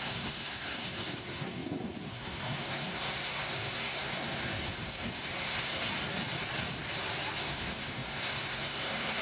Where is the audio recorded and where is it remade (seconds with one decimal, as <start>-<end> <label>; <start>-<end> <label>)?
0.0-5.9 remade; 5.9-7.4 recorded; 7.4-9.2 remade

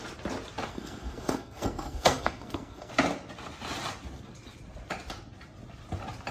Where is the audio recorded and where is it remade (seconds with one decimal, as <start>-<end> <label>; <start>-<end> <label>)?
0.0-0.7 recorded; 0.7-2.9 remade; 2.9-6.3 recorded

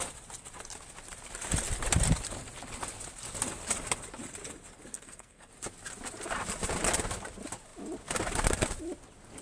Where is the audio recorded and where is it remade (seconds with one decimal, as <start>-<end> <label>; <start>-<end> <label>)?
0.0-4.9 recorded; 4.9-5.5 remade; 5.5-9.4 recorded

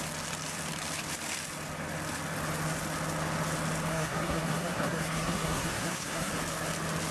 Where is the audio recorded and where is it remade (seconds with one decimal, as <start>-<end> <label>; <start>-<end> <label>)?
0.0-3.9 recorded; 3.9-6.3 remade; 6.3-7.1 recorded

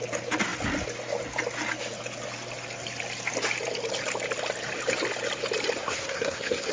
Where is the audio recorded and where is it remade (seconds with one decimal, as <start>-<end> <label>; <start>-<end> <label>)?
0.0-5.8 recorded; 5.8-6.7 remade